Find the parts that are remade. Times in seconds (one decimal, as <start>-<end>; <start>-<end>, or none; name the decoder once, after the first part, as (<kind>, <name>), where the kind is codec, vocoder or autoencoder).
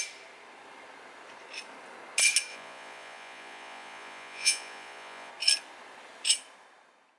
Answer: 2.5-5.3 (vocoder, Vocos)